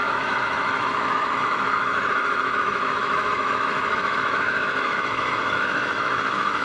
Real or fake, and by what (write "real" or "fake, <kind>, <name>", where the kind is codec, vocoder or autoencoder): fake, autoencoder, DAC-VAE